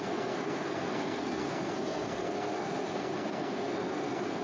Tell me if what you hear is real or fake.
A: fake